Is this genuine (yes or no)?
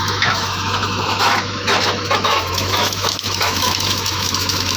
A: no